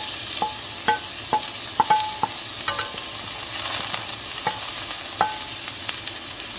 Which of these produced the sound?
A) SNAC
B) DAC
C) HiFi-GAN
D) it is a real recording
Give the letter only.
D